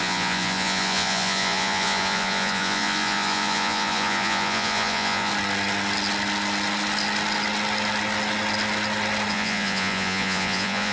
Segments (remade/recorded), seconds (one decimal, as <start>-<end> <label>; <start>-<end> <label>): 0.0-5.3 remade; 5.3-9.3 recorded; 9.3-10.9 remade